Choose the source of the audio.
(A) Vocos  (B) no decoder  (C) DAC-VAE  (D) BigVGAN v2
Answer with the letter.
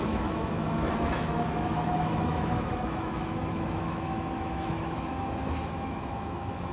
C